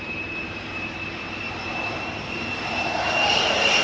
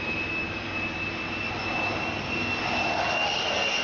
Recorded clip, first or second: second